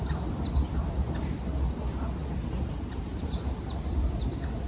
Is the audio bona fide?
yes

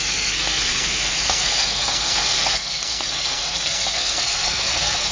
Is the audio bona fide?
no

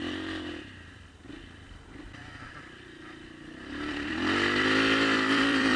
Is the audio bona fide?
no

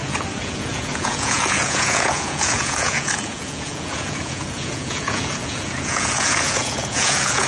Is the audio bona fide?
no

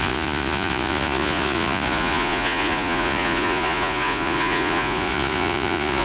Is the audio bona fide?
no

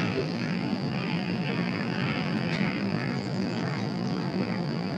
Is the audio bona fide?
no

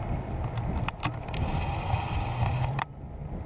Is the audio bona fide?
yes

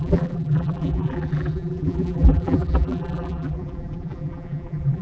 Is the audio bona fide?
no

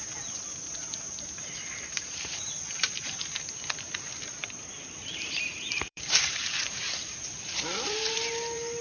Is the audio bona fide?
no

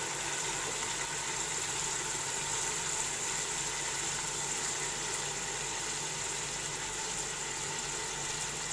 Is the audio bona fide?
yes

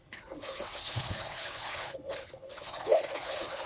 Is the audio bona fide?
no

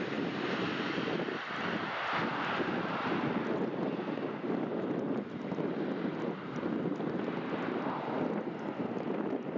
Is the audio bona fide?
yes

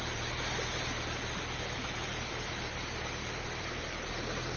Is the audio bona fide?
no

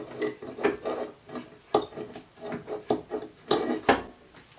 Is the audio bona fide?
yes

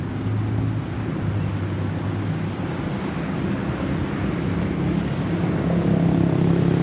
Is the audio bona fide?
yes